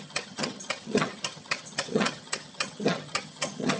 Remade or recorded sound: remade